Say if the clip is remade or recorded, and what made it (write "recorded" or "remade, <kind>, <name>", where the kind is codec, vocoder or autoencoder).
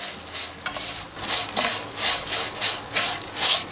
recorded